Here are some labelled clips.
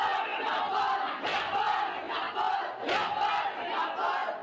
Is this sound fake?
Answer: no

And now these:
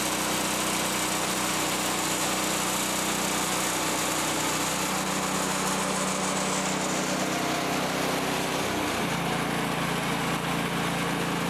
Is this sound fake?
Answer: no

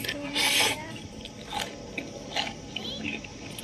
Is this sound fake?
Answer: no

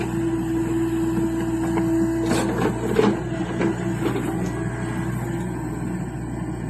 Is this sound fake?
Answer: no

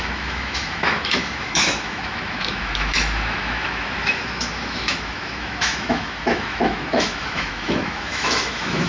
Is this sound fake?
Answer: yes